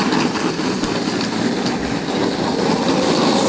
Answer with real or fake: real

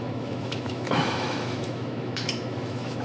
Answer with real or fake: fake